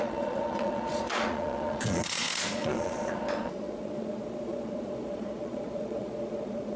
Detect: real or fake fake